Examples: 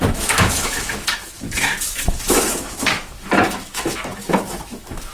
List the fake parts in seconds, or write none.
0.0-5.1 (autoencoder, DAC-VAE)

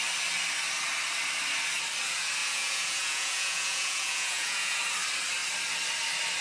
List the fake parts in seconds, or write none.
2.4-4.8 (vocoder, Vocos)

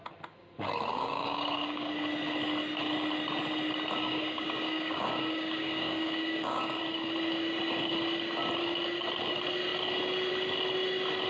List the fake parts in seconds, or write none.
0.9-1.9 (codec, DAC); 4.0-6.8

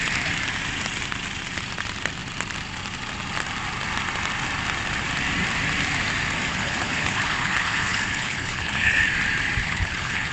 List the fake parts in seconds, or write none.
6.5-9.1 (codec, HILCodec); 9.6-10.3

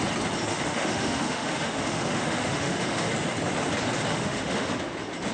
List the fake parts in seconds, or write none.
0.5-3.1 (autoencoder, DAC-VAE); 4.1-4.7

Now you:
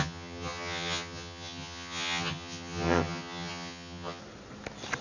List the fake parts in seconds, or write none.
0.0-4.2 (vocoder, HiFi-GAN)

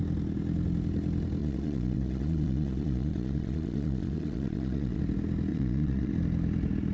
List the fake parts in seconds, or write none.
1.4-5.0 (vocoder, Vocos); 5.5-6.1